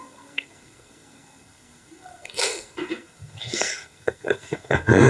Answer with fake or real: fake